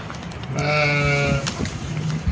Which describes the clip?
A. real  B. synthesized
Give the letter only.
A